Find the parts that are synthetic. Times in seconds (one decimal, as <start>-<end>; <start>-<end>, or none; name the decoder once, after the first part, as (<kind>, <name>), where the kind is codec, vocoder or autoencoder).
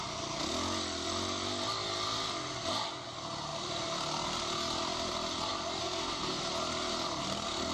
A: 5.8-6.4 (codec, SNAC)